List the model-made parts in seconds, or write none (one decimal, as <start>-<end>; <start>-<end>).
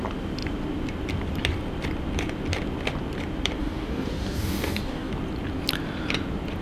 3.6-5.1